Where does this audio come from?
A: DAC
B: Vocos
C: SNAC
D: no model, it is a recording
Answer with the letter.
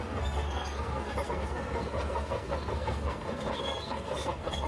C